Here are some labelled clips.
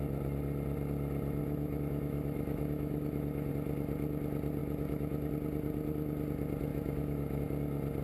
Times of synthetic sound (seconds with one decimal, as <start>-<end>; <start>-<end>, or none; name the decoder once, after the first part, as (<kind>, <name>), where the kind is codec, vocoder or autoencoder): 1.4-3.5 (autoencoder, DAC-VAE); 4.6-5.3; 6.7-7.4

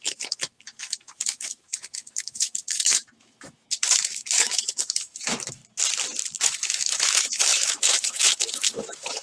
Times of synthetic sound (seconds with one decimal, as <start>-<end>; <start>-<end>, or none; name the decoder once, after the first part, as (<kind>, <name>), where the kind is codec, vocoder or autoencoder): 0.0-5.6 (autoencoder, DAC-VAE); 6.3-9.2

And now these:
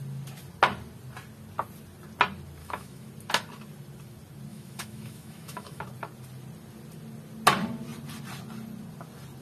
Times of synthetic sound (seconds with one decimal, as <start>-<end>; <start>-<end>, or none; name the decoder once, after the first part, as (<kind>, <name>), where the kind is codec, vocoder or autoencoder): 2.6-3.1 (autoencoder, DAC-VAE); 4.5-5.8

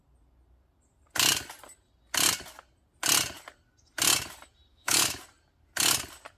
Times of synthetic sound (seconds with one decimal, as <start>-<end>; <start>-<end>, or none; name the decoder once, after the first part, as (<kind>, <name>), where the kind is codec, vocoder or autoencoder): 4.7-5.2 (autoencoder, DAC-VAE)

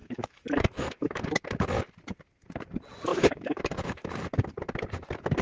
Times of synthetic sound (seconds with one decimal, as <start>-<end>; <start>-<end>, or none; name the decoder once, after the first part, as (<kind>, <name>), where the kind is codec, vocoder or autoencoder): 0.0-1.2 (autoencoder, DAC-VAE); 3.1-4.1